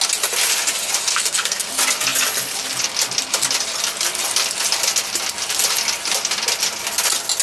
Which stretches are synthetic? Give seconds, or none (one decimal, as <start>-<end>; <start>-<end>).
1.1-1.7